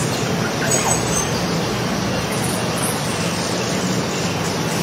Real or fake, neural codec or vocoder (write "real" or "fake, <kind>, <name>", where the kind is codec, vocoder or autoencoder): real